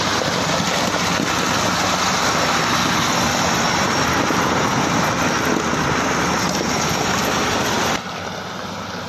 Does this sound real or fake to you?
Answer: real